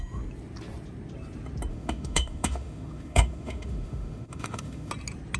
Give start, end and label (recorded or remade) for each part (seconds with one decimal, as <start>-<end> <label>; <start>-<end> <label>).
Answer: 0.0-1.7 recorded; 1.7-4.9 remade; 4.9-5.4 recorded